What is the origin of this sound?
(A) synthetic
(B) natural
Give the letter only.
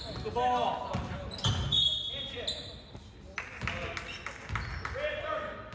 B